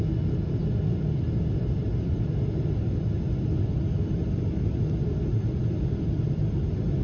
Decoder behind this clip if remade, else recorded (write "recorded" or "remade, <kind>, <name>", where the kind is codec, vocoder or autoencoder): recorded